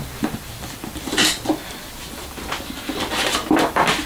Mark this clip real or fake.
real